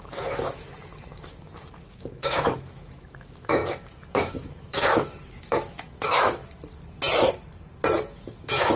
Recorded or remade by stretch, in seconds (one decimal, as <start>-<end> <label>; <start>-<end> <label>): 0.0-3.6 remade; 3.6-4.1 recorded; 4.1-6.4 remade; 6.4-8.1 recorded; 8.1-8.8 remade